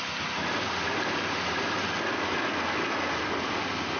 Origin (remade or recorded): recorded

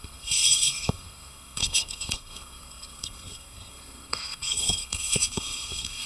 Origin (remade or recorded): remade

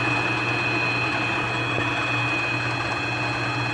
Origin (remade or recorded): recorded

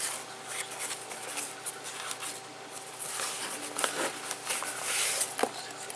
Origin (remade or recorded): recorded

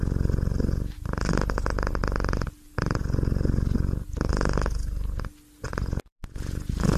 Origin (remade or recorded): recorded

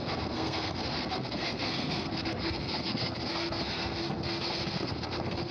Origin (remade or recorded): remade